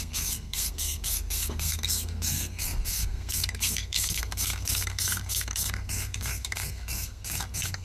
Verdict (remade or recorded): remade